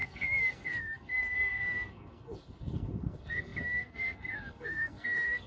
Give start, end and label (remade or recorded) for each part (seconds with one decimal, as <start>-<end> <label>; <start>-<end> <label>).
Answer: 0.0-5.5 remade